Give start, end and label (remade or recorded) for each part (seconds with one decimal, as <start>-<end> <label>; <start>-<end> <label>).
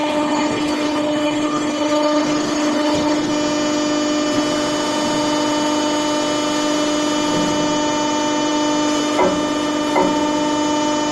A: 0.0-3.3 remade; 3.3-11.1 recorded